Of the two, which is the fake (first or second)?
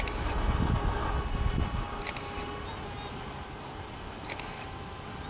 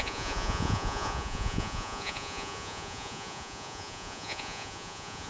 second